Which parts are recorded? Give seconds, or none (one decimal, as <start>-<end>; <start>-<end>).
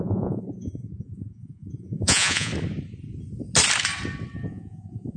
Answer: 2.5-4.5